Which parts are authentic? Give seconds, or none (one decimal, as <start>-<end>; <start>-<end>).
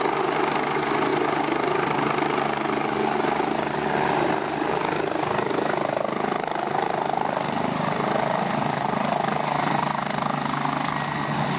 0.0-11.6